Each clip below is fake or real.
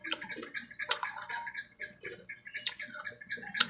fake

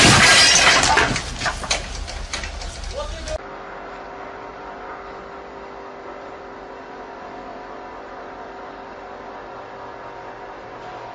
real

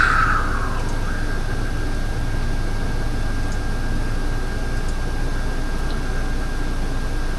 real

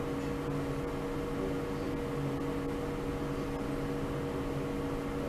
real